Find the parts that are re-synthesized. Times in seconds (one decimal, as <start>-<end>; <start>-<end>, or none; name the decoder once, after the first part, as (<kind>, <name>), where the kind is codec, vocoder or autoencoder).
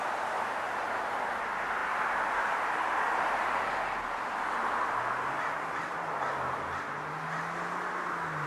none